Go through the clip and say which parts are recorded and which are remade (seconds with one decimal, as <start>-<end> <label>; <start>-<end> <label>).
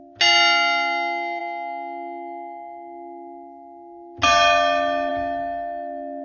0.0-6.2 recorded